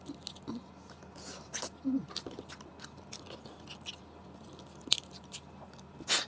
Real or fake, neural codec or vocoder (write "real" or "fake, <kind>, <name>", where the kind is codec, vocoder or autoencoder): real